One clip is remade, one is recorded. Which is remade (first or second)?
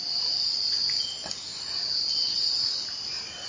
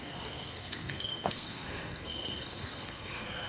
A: second